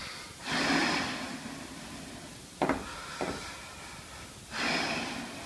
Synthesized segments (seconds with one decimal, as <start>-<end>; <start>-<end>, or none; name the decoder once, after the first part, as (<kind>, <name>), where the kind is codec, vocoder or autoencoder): none